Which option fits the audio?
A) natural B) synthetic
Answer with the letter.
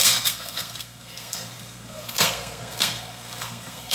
B